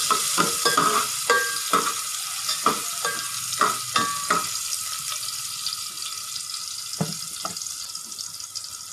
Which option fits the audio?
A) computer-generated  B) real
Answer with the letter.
B